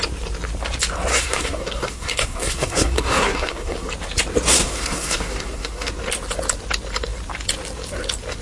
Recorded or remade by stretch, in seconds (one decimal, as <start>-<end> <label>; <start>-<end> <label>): 0.0-1.1 recorded; 1.1-3.9 remade; 3.9-4.5 recorded; 4.5-5.9 remade; 5.9-8.4 recorded